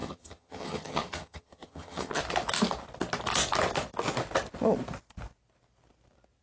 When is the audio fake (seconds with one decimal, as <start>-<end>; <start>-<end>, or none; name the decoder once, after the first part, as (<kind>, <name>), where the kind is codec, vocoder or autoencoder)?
0.0-2.2 (vocoder, HiFi-GAN)